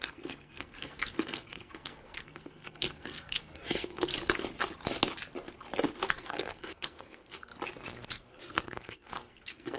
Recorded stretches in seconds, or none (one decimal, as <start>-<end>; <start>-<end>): 4.1-6.1; 7.5-8.1